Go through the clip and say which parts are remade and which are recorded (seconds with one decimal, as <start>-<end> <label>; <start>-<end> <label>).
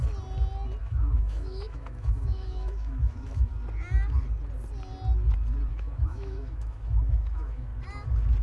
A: 0.0-0.8 recorded; 0.8-3.5 remade; 3.5-5.7 recorded; 5.7-7.7 remade; 7.7-8.4 recorded